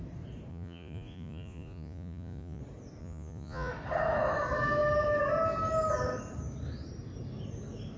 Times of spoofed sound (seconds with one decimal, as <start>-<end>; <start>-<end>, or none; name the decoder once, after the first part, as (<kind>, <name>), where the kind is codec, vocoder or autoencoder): 0.5-2.6 (vocoder, Vocos); 3.0-3.7